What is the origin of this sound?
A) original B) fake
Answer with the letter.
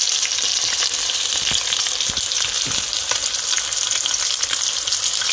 A